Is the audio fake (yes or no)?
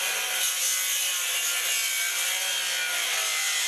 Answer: no